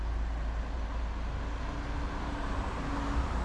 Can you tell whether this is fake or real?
real